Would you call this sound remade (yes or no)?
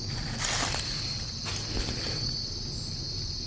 no